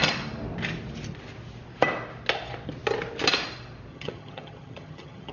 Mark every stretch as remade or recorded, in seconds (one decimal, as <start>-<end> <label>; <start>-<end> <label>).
0.0-3.9 recorded; 3.9-5.3 remade